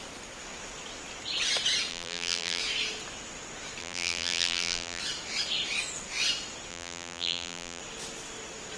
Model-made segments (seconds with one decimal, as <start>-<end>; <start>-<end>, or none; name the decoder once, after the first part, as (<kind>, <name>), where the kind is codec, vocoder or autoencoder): 1.9-2.6 (vocoder, BigVGAN v2); 3.8-5.0; 6.7-7.8